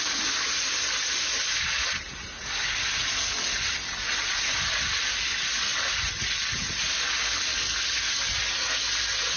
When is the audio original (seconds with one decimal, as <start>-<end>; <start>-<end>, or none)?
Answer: 0.0-9.4